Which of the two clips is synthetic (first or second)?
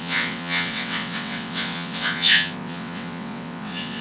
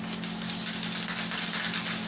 first